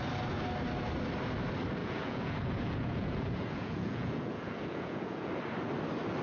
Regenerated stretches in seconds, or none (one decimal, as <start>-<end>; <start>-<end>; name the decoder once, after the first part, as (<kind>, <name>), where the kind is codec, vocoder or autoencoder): 1.8-5.3 (vocoder, Vocos)